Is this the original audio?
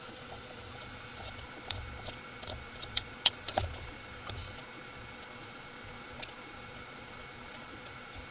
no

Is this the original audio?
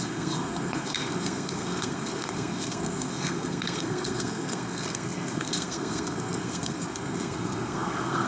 no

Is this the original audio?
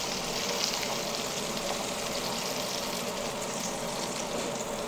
yes